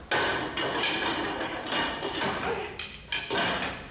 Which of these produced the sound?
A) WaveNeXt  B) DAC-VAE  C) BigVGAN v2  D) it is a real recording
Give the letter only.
D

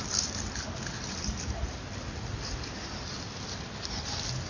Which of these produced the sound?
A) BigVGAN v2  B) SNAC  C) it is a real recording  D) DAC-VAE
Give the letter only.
C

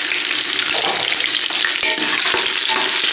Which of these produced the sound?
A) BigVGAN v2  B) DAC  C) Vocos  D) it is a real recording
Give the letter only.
D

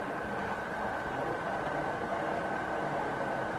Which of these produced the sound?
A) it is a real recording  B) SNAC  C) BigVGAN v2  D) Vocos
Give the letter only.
A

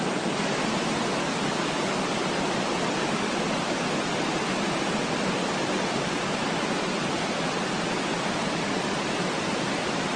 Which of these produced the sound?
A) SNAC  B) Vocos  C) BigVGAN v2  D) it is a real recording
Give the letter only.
D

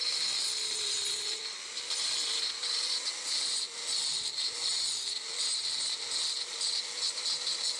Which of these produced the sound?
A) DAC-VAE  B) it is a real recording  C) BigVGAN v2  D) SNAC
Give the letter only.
B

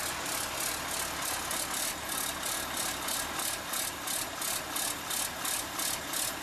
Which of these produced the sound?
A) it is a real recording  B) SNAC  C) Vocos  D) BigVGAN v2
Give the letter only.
A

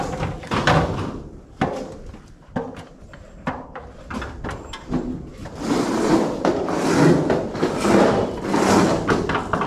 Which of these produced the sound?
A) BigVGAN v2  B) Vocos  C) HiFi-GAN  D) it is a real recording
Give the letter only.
D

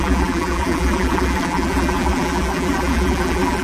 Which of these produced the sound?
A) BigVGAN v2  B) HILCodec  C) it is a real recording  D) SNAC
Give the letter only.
A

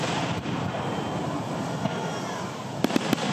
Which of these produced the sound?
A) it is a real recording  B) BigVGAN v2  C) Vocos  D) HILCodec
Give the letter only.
A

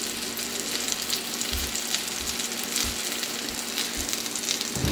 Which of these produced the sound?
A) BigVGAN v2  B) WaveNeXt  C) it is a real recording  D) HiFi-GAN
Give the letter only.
C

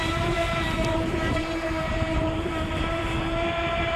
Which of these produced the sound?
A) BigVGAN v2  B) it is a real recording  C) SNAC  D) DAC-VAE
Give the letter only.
A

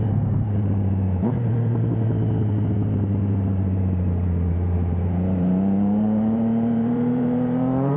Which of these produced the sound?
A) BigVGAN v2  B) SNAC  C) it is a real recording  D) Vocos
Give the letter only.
A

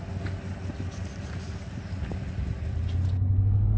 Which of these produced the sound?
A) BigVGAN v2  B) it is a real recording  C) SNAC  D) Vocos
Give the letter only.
B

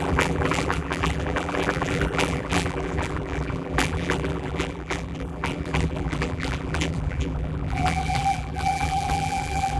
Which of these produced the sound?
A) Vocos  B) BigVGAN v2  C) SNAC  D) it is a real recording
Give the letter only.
B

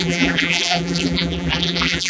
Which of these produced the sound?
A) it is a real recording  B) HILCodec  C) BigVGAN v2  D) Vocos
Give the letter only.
C